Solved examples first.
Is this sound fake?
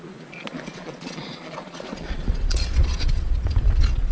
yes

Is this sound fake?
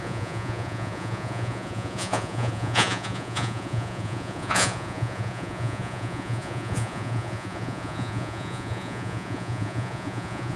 yes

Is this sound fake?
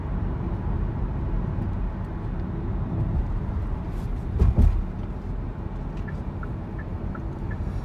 no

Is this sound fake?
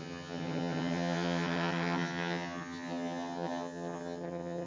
yes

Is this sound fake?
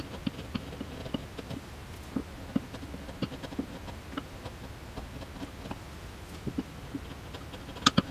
no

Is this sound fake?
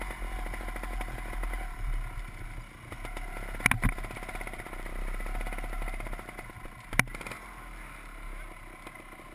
no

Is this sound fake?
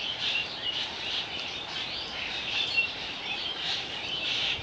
yes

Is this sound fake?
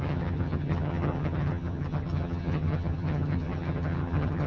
yes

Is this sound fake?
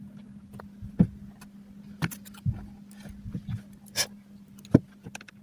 no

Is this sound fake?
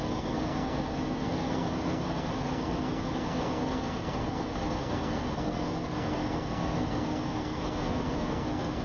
yes